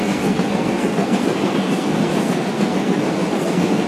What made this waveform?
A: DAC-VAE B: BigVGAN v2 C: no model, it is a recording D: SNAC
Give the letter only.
D